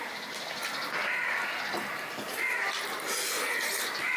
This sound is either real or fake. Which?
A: fake